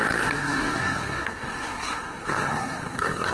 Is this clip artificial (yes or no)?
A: yes